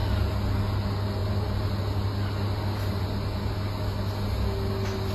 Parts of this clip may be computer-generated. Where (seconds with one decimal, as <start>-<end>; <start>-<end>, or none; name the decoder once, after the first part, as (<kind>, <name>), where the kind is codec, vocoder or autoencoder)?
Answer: none